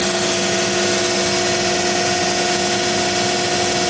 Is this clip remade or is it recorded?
recorded